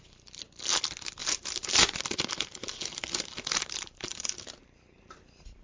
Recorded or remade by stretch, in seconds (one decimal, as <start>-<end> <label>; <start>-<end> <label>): 0.0-1.2 recorded; 1.2-4.6 remade; 4.6-5.6 recorded